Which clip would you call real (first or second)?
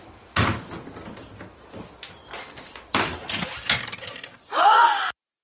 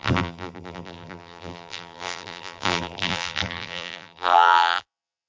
first